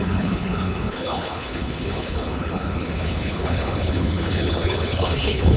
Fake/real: fake